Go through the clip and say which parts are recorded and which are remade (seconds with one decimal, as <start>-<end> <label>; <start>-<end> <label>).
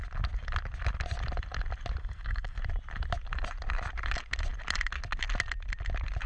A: 0.0-2.0 recorded; 2.0-2.6 remade; 2.6-6.3 recorded